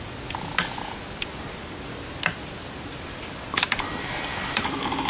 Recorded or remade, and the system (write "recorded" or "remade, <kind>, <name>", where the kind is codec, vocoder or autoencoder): recorded